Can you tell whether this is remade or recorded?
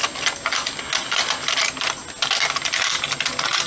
recorded